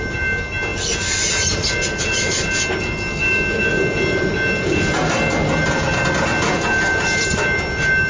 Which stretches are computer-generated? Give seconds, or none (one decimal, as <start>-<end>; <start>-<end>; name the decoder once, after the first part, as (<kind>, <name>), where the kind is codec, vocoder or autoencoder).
none